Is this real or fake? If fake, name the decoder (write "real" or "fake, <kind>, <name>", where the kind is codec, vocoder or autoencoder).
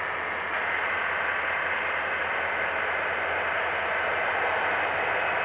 real